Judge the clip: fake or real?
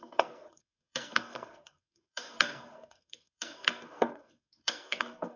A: fake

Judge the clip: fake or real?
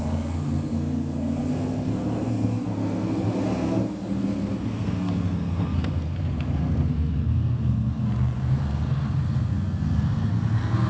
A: fake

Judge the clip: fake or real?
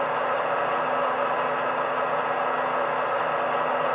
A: real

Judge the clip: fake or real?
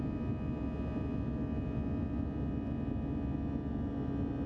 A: real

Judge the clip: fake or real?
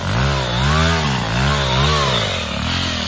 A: real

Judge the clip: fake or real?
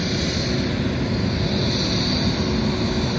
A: real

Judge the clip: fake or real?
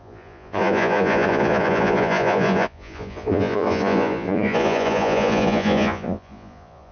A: fake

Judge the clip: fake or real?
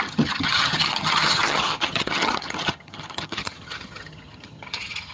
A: fake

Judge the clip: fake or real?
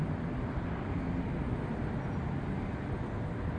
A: real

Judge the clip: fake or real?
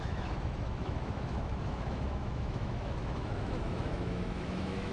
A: fake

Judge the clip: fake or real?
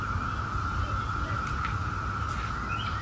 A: real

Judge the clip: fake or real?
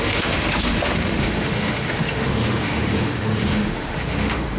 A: fake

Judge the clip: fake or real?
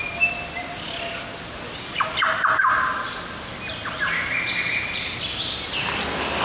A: real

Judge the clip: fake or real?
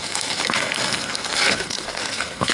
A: fake